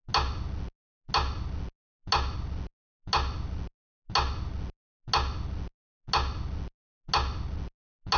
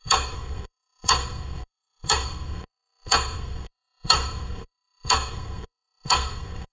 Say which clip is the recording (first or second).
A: first